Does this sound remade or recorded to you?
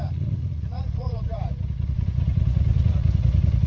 remade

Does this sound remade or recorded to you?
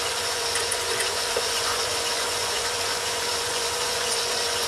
remade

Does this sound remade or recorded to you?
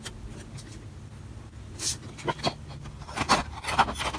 recorded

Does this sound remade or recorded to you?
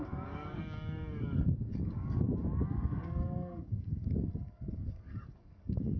remade